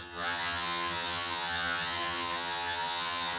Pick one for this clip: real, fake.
fake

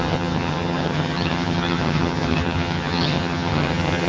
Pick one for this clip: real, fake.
fake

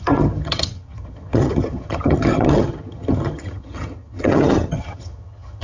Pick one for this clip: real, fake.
fake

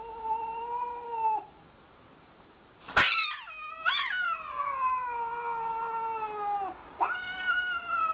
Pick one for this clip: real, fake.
real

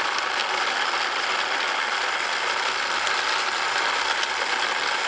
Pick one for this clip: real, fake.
real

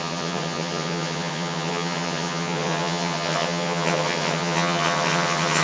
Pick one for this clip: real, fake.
fake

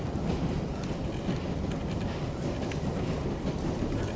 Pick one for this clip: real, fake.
real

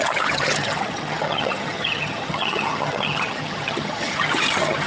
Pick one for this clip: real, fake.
fake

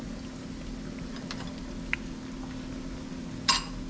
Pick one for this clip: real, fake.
real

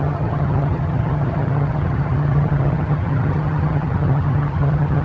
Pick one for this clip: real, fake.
fake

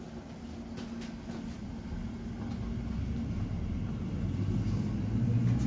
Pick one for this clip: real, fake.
real